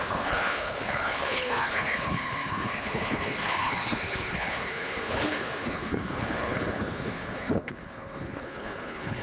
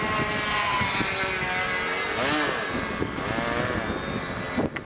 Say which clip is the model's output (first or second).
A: first